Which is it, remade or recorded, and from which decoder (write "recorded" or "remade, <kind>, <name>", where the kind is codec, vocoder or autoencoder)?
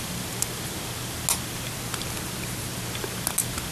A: recorded